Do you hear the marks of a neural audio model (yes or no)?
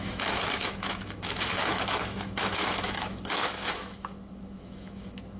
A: yes